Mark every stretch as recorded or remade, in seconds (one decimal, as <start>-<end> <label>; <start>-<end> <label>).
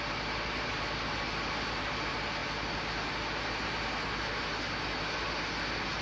0.0-6.0 recorded